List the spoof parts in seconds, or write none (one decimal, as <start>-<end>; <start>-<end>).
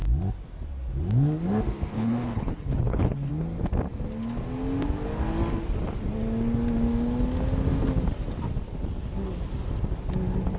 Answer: 1.9-3.3